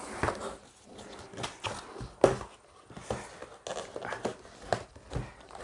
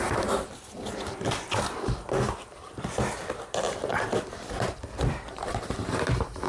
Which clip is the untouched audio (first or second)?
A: first